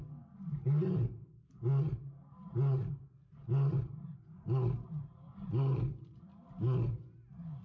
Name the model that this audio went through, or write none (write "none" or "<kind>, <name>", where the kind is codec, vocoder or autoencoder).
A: vocoder, BigVGAN v2